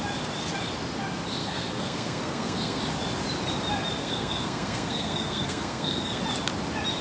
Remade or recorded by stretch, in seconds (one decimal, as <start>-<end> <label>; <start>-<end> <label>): 0.0-1.4 recorded; 1.4-2.8 remade; 2.8-4.0 recorded; 4.0-6.2 remade; 6.2-7.0 recorded